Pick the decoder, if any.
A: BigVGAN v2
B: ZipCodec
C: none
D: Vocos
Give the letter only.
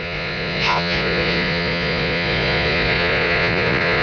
D